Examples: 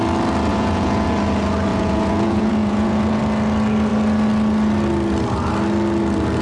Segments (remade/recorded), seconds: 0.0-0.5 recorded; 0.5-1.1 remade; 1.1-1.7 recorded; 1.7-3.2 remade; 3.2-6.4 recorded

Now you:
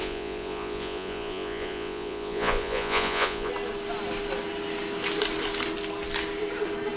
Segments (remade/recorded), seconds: 0.0-3.5 remade; 3.5-7.0 recorded

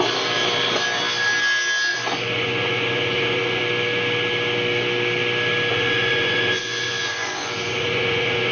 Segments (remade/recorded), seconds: 0.0-1.9 recorded; 1.9-3.6 remade; 3.6-5.7 recorded; 5.7-8.5 remade

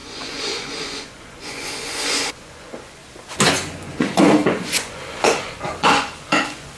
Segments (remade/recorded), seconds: 0.0-3.0 remade; 3.0-3.5 recorded; 3.5-6.8 remade

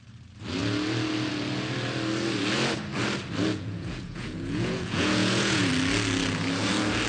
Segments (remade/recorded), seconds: 0.0-3.5 recorded; 3.5-5.7 remade; 5.7-7.1 recorded

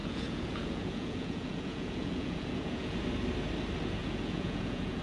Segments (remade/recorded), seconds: 0.0-3.0 remade; 3.0-4.0 recorded; 4.0-5.0 remade

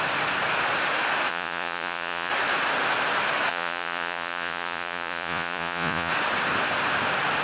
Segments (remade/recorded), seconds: 0.0-1.3 recorded; 1.3-2.3 remade; 2.3-3.5 recorded; 3.5-6.1 remade; 6.1-7.4 recorded